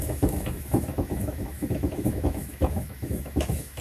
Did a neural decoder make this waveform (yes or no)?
yes